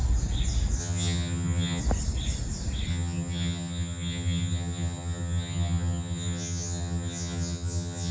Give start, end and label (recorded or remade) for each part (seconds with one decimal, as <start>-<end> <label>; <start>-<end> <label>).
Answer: 0.0-0.8 recorded; 0.8-1.8 remade; 1.8-2.9 recorded; 2.9-8.1 remade